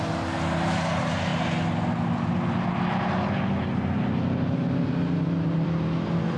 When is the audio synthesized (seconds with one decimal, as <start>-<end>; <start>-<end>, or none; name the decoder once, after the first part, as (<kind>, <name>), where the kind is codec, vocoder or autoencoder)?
none